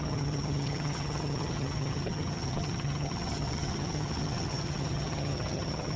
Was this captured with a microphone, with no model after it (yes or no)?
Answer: no